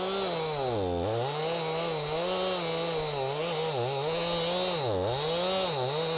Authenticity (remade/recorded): recorded